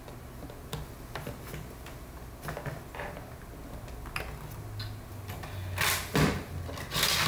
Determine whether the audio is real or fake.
real